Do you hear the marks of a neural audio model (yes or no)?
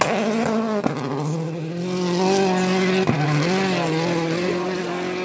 no